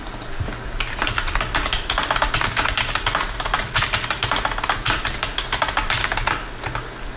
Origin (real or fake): real